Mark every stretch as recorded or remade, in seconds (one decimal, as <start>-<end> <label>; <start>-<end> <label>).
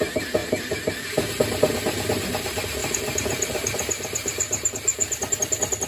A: 0.0-0.4 recorded; 0.4-0.9 remade; 0.9-2.8 recorded; 2.8-4.7 remade; 4.7-5.9 recorded